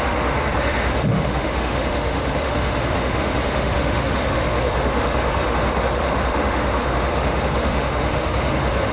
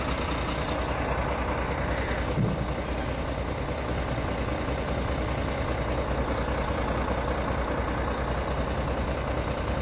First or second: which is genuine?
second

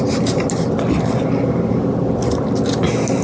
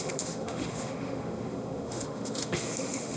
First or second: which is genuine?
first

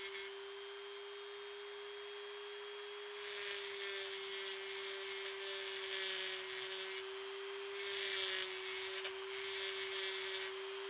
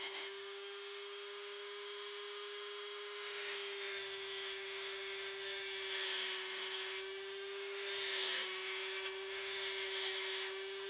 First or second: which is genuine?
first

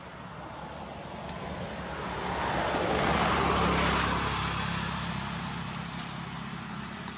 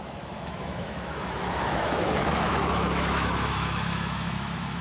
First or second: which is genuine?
first